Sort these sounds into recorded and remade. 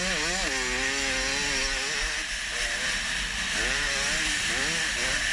recorded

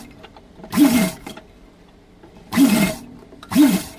remade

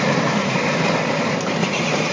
remade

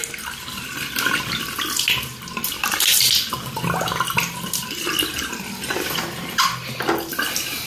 recorded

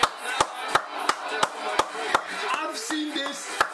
recorded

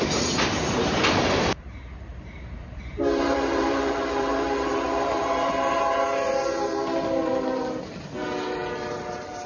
remade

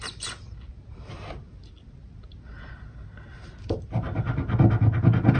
recorded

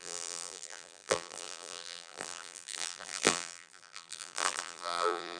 remade